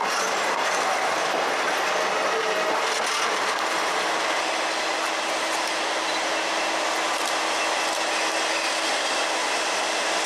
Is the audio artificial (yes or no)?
no